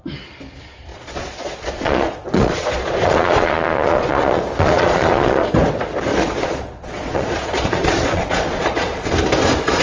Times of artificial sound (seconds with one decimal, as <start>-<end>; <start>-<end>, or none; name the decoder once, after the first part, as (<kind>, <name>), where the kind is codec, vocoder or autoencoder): 0.9-5.5 (vocoder, Vocos); 6.1-9.1